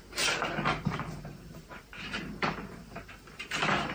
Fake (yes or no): yes